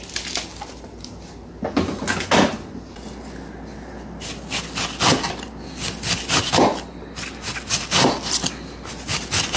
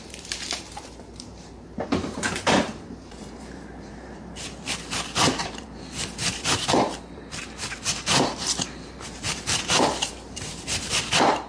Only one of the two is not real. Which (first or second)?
second